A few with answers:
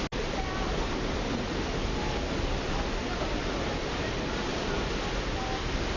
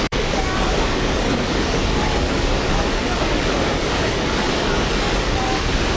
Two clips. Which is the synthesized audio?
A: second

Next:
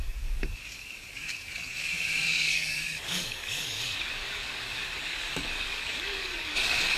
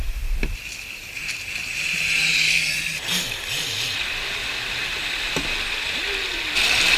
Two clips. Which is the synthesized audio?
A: first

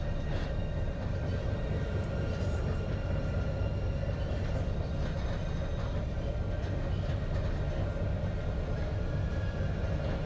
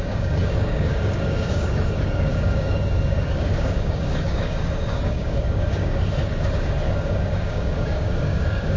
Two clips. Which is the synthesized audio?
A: second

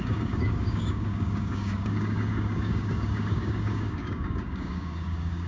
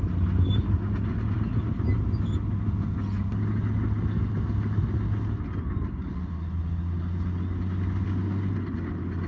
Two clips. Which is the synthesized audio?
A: first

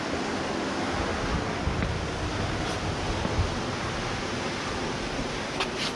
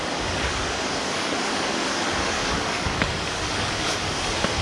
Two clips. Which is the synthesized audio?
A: second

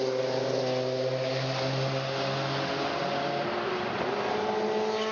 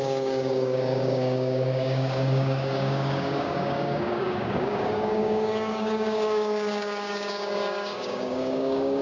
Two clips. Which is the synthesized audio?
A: second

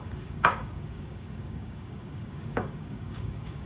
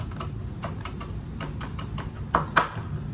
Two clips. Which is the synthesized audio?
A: first